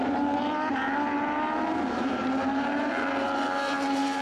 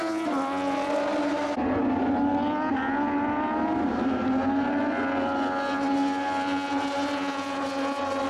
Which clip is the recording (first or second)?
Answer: second